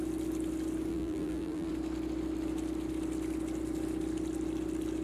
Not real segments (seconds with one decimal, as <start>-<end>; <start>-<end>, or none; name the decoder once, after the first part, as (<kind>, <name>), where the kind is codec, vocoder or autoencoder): 0.9-1.7 (vocoder, BigVGAN v2)